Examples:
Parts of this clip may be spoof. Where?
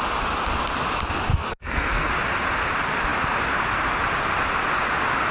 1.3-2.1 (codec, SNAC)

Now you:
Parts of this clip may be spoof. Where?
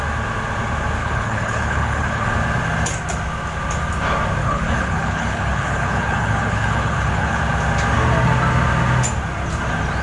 1.0-2.3 (codec, HILCodec); 4.4-7.4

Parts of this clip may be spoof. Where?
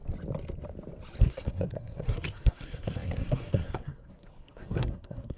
1.2-5.4 (codec, SNAC)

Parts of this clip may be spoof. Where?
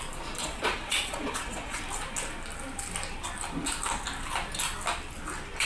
0.4-1.8 (vocoder, Vocos)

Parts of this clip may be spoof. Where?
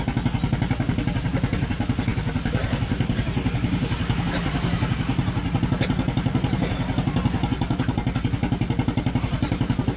none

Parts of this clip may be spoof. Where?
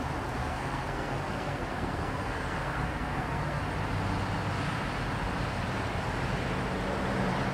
0.4-3.6 (codec, SNAC)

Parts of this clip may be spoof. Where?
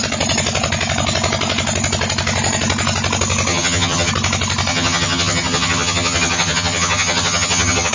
3.5-4.1 (vocoder, HiFi-GAN); 4.7-7.9